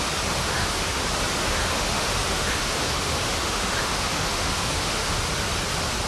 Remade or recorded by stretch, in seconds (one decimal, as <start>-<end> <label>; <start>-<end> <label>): 0.0-0.4 recorded; 0.4-1.0 remade; 1.0-1.5 recorded; 1.5-5.2 remade; 5.2-6.1 recorded